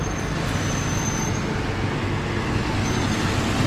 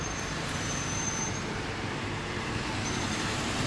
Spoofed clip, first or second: second